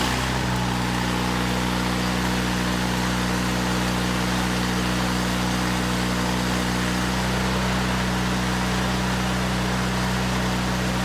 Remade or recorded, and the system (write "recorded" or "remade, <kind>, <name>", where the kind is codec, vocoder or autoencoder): recorded